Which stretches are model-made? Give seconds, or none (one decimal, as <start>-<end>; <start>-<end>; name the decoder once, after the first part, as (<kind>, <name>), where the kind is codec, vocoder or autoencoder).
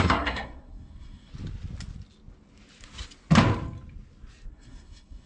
0.0-1.3 (codec, SNAC); 4.5-5.3